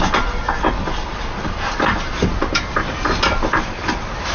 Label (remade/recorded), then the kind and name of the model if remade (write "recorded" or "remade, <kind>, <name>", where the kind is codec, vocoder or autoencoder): remade, vocoder, BigVGAN v2